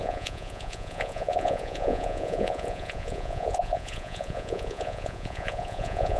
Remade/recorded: remade